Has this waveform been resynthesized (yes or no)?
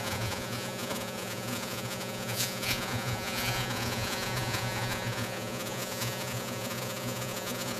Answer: yes